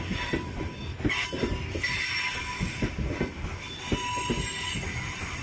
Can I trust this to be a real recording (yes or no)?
yes